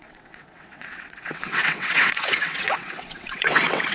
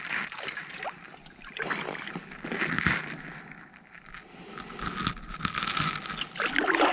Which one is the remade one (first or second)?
first